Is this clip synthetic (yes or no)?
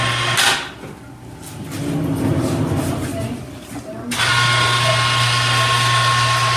no